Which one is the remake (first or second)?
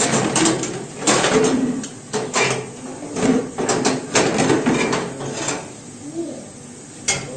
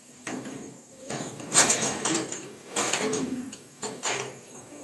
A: second